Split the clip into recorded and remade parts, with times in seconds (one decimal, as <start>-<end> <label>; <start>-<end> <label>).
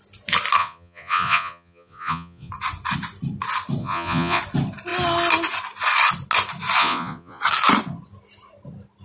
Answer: 0.0-0.6 recorded; 0.6-2.5 remade; 2.5-3.8 recorded; 3.8-4.4 remade; 4.4-6.8 recorded; 6.8-7.4 remade; 7.4-9.0 recorded